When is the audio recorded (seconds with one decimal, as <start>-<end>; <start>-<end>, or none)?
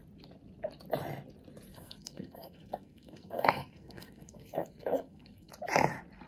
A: 0.0-1.7; 5.5-6.3